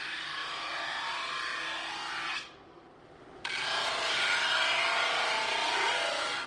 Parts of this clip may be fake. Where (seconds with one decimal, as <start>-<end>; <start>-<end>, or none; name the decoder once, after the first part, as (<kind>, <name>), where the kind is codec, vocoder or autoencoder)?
none